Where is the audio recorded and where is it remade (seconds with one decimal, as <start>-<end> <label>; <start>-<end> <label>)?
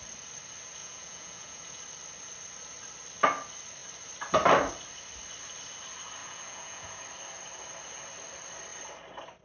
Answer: 0.0-0.8 recorded; 0.8-1.8 remade; 1.8-6.2 recorded; 6.2-7.0 remade; 7.0-9.4 recorded